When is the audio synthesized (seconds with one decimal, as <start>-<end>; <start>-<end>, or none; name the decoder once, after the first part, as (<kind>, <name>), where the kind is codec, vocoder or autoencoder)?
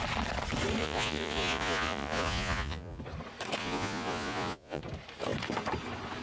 0.8-3.0 (vocoder, Vocos); 3.6-4.8